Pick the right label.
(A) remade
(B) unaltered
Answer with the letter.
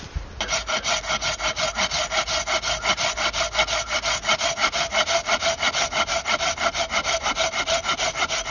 B